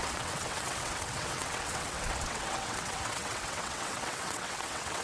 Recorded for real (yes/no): no